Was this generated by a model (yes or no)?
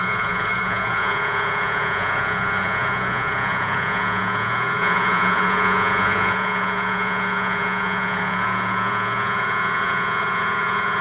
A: yes